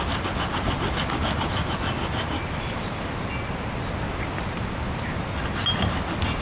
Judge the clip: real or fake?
real